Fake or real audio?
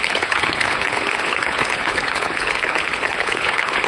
fake